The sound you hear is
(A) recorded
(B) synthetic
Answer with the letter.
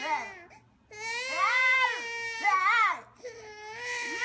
A